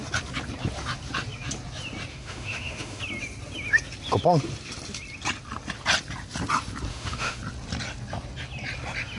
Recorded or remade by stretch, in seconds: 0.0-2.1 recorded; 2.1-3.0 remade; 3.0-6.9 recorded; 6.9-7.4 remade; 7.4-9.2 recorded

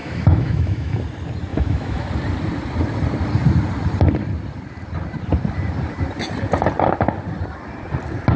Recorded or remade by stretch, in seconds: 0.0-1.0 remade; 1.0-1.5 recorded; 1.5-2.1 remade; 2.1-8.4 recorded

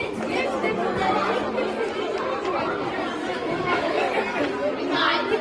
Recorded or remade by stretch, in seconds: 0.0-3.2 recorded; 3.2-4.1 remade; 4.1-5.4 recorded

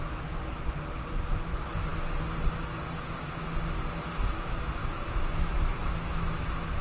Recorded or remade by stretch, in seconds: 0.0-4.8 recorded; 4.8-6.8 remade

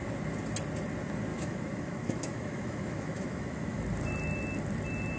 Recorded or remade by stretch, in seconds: 0.0-1.3 recorded; 1.3-3.8 remade; 3.8-5.2 recorded

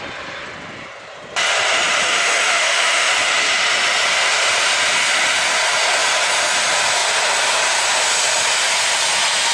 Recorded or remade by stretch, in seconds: 0.0-2.1 recorded; 2.1-3.1 remade; 3.1-9.5 recorded

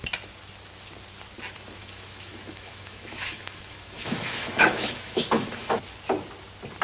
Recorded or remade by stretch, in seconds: 0.0-1.8 recorded; 1.8-5.7 remade; 5.7-6.8 recorded

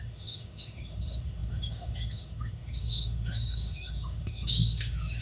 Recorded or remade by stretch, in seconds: 0.0-5.2 remade